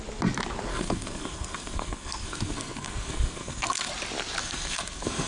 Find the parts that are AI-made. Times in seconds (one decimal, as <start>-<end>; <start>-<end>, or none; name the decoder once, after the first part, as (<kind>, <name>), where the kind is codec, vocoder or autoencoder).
0.7-3.9 (codec, SNAC); 4.4-5.3